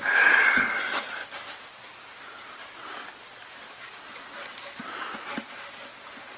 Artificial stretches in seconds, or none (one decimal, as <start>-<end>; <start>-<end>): none